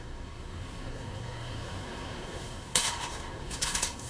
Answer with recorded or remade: remade